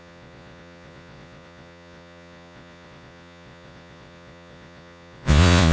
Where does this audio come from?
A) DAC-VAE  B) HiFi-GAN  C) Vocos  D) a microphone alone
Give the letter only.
C